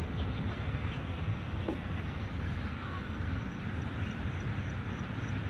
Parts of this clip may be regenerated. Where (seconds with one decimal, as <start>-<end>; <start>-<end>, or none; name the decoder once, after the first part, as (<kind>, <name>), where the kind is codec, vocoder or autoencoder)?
0.0-3.6 (codec, SNAC)